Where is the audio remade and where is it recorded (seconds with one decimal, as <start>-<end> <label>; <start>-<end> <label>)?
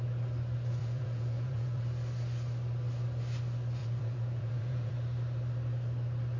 0.0-0.8 recorded; 0.8-1.8 remade; 1.8-3.8 recorded; 3.8-4.9 remade; 4.9-6.4 recorded